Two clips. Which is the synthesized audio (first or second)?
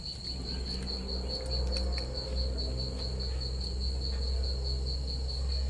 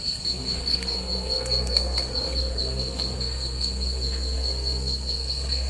second